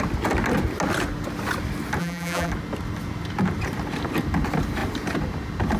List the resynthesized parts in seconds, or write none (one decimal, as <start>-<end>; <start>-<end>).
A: 2.0-2.5